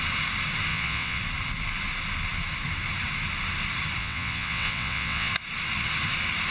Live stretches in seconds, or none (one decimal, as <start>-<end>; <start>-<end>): 0.0-0.7; 1.2-4.0; 5.3-6.5